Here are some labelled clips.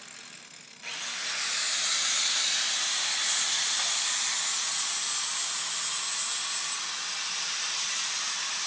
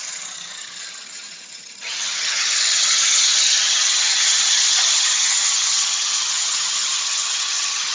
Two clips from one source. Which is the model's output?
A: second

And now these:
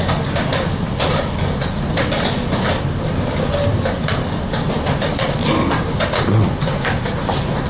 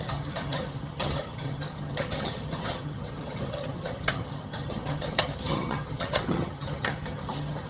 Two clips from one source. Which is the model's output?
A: second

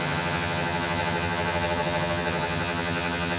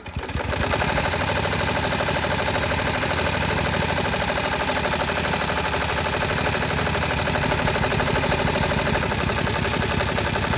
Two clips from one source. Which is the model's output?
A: first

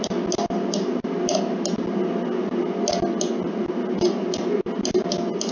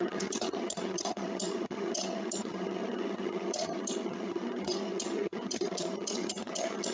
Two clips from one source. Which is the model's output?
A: second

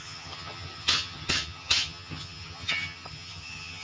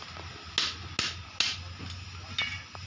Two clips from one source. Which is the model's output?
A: first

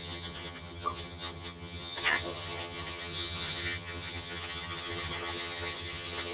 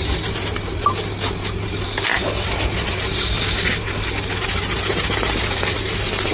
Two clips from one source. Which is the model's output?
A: first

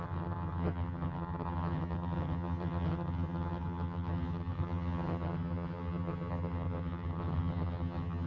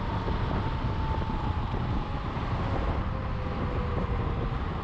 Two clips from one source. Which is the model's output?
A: first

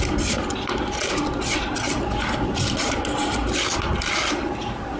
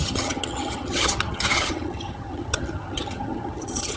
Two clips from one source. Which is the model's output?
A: second